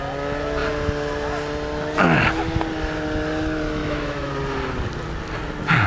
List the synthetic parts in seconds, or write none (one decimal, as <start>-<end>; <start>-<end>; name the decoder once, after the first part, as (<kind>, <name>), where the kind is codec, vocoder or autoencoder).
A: 3.8-4.3 (autoencoder, DAC-VAE)